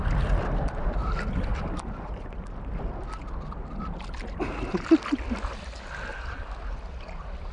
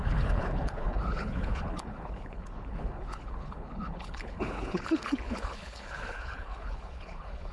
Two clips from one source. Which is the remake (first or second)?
second